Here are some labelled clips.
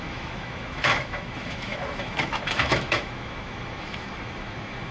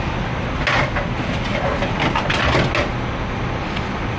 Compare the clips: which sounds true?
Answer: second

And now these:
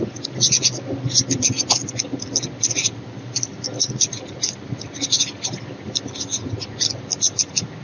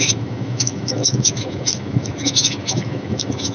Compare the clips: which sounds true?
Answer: first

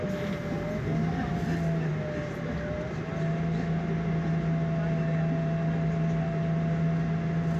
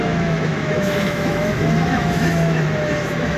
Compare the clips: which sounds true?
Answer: first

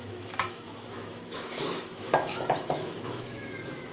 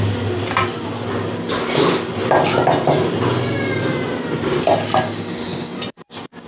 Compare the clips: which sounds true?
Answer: second